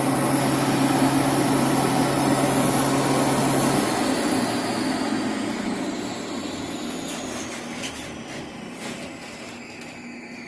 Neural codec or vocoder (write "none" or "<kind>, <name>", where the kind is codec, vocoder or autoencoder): none